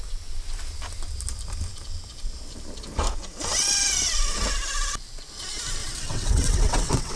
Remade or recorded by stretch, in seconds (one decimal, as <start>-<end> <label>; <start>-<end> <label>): 0.0-5.8 recorded; 5.8-7.2 remade

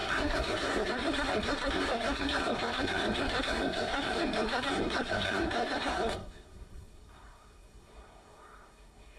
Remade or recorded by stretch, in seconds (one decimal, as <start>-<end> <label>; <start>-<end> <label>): 0.0-9.2 remade

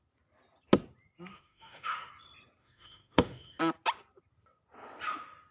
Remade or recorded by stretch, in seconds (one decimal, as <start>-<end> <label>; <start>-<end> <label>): 0.0-1.3 recorded; 1.3-2.1 remade; 2.1-2.6 recorded; 2.6-3.6 remade; 3.6-5.5 recorded

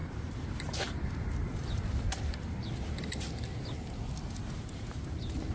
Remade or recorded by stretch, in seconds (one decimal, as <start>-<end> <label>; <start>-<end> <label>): 0.0-3.5 remade; 3.5-4.9 recorded; 4.9-5.5 remade

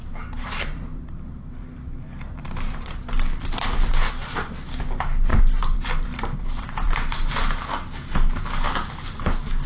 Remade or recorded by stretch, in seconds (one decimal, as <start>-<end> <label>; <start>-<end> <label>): 0.0-3.5 remade; 3.5-5.3 recorded; 5.3-7.3 remade; 7.3-9.7 recorded